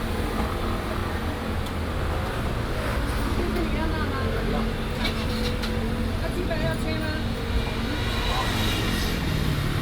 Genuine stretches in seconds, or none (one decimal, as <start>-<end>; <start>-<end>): 0.0-9.8

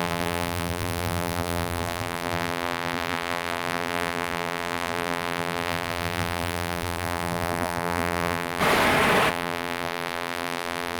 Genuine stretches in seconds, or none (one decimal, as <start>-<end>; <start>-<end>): 8.6-9.3

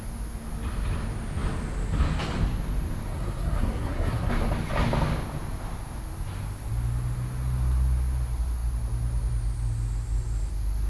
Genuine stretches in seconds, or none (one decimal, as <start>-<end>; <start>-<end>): 0.0-3.1; 4.3-10.9

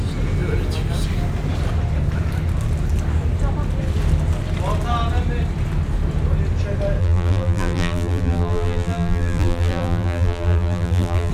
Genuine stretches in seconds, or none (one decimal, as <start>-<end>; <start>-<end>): 0.0-7.0

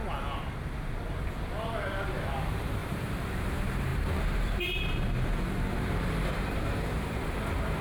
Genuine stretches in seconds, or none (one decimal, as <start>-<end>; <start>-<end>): 0.0-2.4

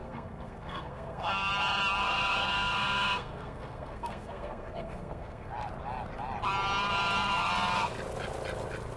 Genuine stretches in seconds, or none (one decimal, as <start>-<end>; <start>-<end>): 1.5-2.0; 5.5-9.0